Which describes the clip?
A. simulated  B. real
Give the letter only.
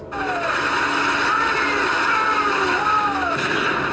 B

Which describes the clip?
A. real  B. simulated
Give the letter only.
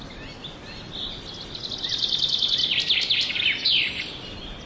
A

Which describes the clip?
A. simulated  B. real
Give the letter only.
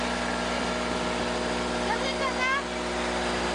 B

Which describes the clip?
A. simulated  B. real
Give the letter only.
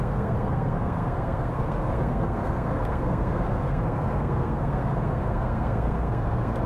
A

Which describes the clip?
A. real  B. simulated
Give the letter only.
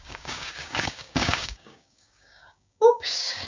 B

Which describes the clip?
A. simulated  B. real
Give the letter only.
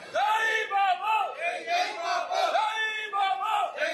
B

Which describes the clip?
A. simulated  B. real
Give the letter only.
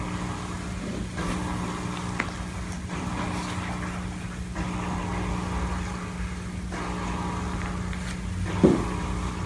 B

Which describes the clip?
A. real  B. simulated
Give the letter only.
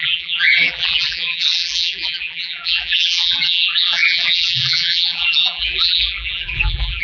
B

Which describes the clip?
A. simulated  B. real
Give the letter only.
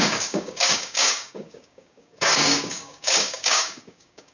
A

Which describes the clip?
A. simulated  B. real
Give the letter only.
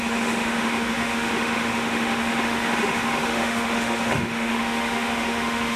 A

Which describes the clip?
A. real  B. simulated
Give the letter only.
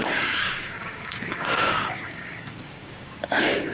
B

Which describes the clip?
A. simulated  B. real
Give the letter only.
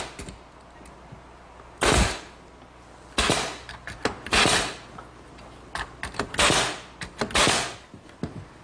B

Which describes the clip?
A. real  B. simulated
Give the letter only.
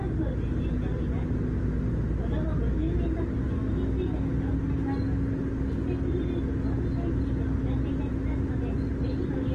A